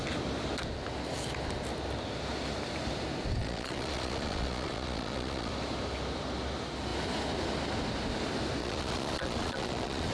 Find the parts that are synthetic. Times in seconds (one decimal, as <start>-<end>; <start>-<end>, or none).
3.4-5.5; 8.6-10.1